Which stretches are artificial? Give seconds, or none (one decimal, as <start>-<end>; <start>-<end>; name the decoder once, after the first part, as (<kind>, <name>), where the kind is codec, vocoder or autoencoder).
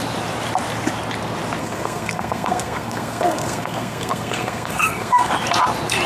1.6-5.3 (codec, SNAC)